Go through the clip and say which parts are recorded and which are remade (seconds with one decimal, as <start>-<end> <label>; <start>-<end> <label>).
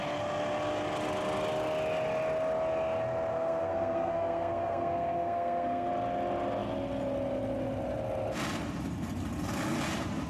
0.0-3.3 recorded; 3.3-5.9 remade; 5.9-10.3 recorded